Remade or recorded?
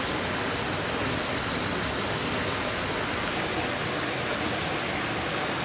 recorded